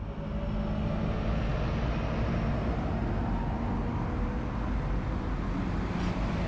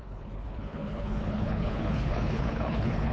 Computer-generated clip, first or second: second